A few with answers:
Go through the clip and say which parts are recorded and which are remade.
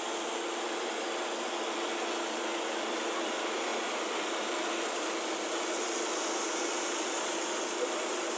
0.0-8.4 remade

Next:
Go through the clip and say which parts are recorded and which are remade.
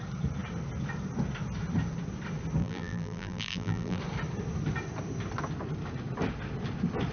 0.0-2.6 recorded; 2.6-4.0 remade; 4.0-7.1 recorded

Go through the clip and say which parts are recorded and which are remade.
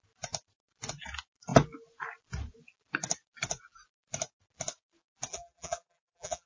0.0-5.3 recorded; 5.3-6.5 remade